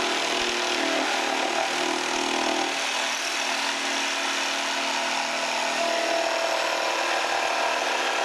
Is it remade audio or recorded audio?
recorded